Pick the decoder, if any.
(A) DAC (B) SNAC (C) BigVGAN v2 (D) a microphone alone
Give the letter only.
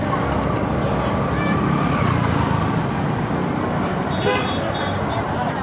D